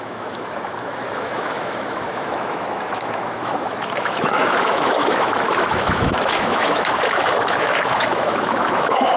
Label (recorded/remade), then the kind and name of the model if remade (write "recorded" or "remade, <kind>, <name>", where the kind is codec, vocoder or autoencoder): remade, autoencoder, DAC-VAE